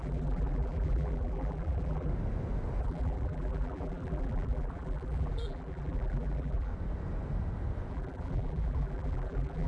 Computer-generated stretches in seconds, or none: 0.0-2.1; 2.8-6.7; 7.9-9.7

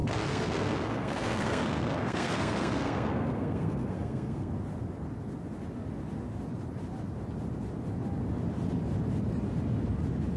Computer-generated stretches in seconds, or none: 0.0-4.5

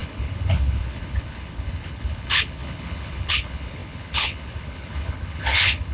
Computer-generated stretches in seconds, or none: 0.0-5.9

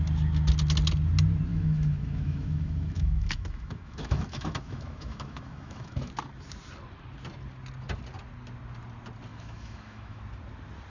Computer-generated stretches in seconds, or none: 1.5-6.1; 9.3-10.2

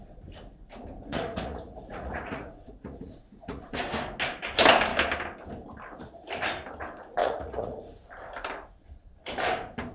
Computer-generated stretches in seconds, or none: 1.1-3.8; 7.2-7.9

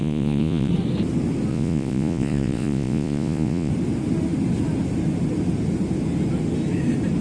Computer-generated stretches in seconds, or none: 0.0-0.7; 1.5-3.7

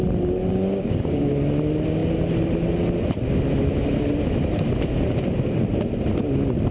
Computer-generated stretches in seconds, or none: 0.5-1.3

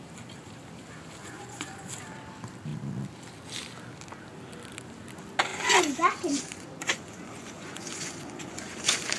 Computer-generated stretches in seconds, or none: 1.2-1.9; 5.5-9.2